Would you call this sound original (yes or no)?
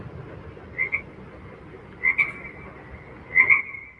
yes